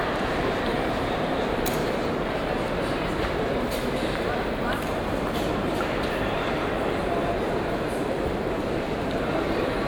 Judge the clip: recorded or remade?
remade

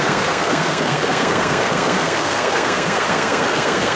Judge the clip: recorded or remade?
remade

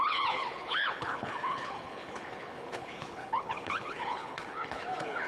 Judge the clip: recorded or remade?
remade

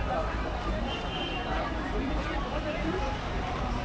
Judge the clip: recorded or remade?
remade